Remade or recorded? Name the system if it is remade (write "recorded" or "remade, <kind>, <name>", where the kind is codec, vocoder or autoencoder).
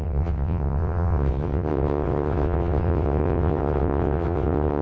remade, vocoder, WaveNeXt